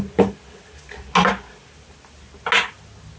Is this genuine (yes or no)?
yes